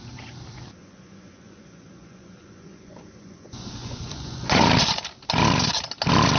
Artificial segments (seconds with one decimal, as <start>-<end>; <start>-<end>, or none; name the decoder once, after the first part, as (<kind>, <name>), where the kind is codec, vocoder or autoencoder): 0.8-4.6 (vocoder, Vocos)

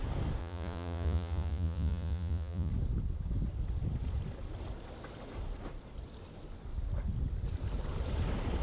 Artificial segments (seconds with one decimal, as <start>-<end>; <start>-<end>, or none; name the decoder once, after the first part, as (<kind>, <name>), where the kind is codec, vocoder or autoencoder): 0.4-2.7 (vocoder, Vocos)

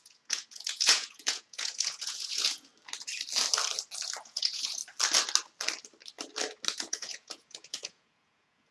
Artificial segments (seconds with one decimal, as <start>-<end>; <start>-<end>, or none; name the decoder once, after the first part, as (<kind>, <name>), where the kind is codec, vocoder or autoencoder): 0.0-2.7 (vocoder, Vocos); 4.2-4.8; 6.8-8.7